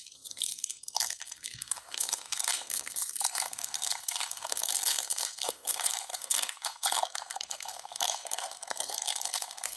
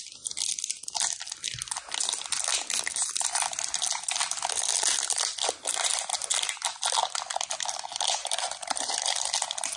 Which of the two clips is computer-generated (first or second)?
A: first